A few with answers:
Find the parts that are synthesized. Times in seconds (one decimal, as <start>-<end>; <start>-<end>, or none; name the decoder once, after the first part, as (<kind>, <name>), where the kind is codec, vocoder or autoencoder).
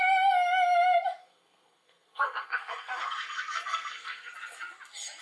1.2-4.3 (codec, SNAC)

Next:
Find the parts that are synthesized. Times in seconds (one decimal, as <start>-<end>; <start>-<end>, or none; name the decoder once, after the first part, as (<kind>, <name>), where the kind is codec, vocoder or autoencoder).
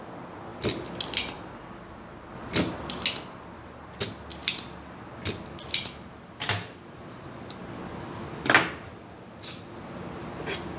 2.4-3.0 (vocoder, BigVGAN v2); 4.3-5.0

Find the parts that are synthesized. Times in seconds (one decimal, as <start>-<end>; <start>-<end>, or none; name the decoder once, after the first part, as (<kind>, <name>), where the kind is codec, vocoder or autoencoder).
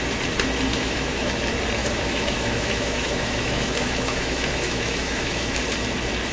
0.7-1.3 (autoencoder, DAC-VAE); 1.8-5.6